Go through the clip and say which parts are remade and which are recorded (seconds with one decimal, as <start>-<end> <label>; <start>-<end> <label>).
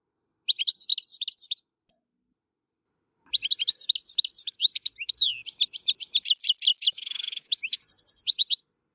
0.0-6.7 recorded; 6.7-7.8 remade; 7.8-8.9 recorded